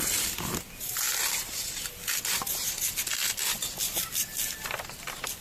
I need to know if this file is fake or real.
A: real